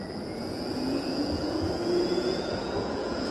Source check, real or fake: fake